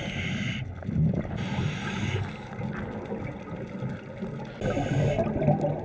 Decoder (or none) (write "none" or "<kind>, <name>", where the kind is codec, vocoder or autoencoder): none